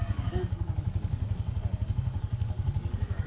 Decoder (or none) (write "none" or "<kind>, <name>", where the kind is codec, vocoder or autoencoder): codec, DAC